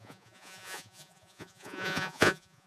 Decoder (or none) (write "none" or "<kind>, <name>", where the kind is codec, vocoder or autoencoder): vocoder, Vocos